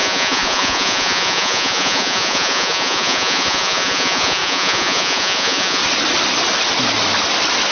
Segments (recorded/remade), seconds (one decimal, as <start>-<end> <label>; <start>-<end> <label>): 0.0-5.8 remade; 5.8-7.7 recorded